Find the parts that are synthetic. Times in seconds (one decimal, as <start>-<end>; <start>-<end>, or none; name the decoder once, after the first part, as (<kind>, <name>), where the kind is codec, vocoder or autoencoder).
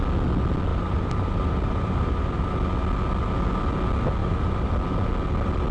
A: 0.7-2.5 (vocoder, BigVGAN v2); 4.2-4.7